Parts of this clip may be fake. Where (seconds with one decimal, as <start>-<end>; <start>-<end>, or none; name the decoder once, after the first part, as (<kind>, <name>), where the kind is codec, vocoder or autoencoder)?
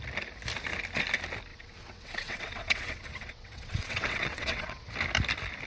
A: 1.5-4.9 (vocoder, WaveNeXt)